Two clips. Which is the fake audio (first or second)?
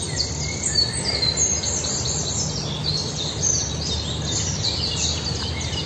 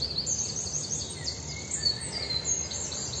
first